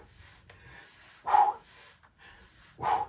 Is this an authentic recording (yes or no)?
yes